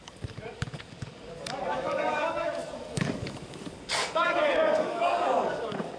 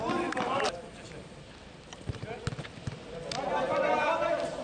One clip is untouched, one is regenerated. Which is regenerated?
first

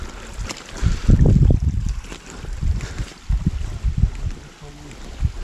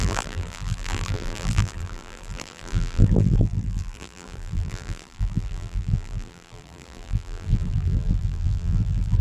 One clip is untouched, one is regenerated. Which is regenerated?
second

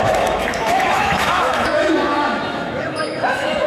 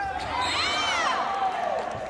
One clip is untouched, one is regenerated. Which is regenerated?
first